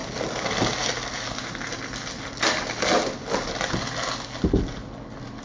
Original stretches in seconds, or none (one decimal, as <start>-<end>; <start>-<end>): 0.0-5.4